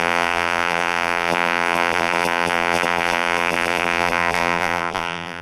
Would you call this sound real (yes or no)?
no